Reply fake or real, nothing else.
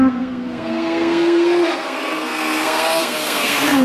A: fake